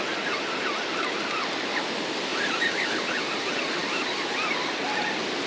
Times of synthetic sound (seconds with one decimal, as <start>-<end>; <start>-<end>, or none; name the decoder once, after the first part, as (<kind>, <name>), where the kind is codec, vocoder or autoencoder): 2.3-3.2 (vocoder, BigVGAN v2)